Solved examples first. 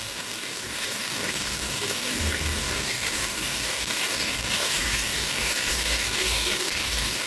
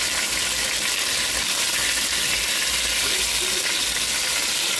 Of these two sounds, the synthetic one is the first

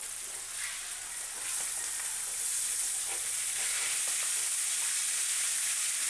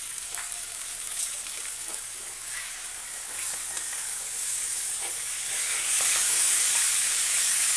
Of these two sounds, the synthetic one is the second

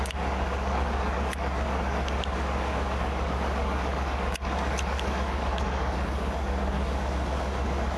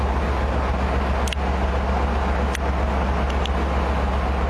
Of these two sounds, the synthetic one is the first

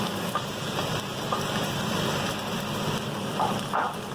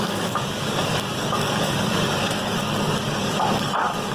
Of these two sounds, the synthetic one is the second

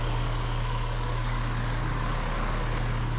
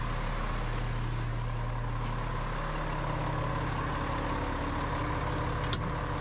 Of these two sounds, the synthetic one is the first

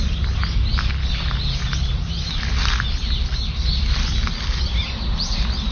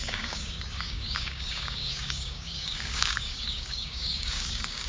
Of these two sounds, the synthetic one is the second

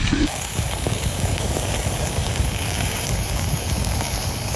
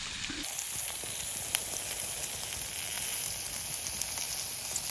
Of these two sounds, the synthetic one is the first